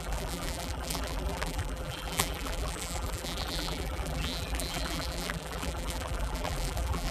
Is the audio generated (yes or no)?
yes